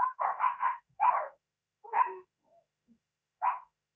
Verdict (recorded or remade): remade